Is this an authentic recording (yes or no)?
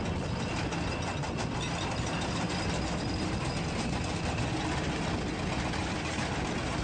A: yes